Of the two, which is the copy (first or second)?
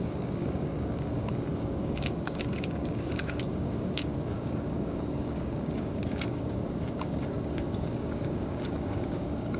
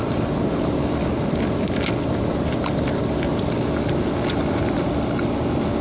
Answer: first